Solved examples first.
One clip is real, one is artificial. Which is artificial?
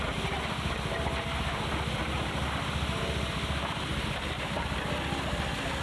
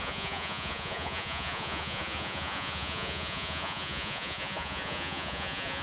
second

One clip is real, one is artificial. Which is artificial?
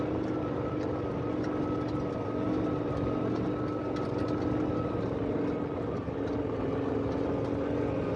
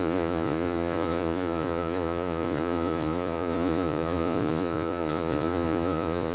second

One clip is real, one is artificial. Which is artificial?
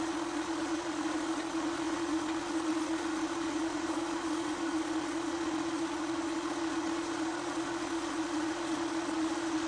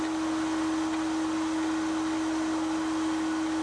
first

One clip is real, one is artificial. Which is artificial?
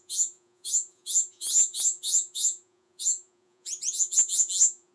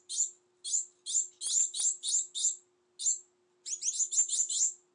first